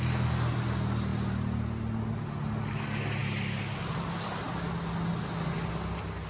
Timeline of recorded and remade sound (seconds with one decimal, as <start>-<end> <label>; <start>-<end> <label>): 0.0-6.3 recorded

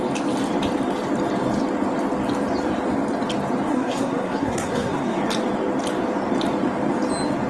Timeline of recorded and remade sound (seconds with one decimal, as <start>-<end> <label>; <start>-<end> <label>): 0.0-3.7 recorded; 3.7-5.2 remade; 5.2-7.5 recorded

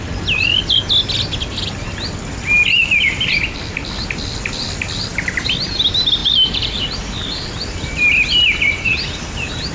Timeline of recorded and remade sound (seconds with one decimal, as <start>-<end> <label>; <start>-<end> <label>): 0.0-2.8 recorded; 2.8-4.0 remade; 4.0-6.2 recorded; 6.2-9.2 remade; 9.2-9.7 recorded